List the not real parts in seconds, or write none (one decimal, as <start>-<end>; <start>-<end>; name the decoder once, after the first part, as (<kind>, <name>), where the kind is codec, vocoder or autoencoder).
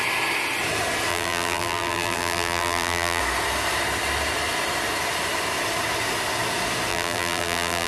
1.1-3.2 (vocoder, BigVGAN v2); 6.9-7.9